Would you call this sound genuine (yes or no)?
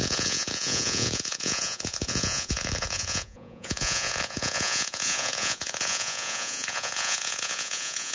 no